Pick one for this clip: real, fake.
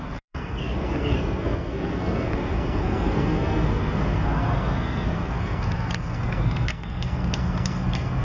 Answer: fake